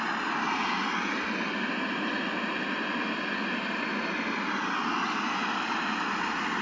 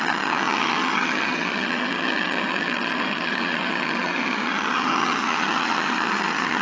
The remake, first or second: second